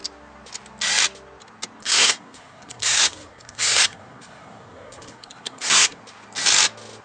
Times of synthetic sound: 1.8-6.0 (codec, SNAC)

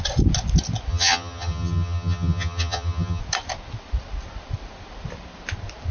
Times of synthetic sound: 0.9-3.2 (vocoder, HiFi-GAN)